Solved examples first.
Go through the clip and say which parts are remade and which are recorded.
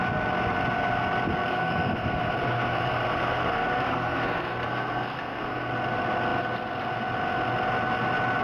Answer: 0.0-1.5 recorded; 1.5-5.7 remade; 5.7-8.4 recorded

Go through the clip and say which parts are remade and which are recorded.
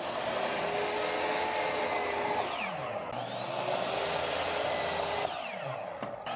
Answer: 0.0-6.4 recorded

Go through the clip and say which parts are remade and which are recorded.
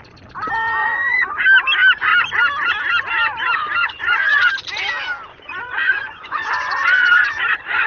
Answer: 0.0-0.8 recorded; 0.8-1.4 remade; 1.4-3.8 recorded; 3.8-4.5 remade; 4.5-5.3 recorded; 5.3-7.9 remade